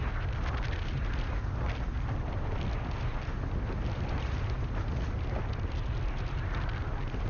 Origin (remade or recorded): recorded